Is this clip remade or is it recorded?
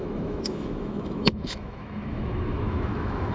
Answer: remade